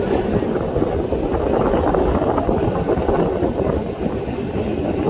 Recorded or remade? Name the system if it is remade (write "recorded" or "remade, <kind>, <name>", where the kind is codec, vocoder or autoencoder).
recorded